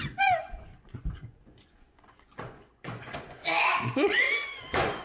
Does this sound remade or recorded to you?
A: remade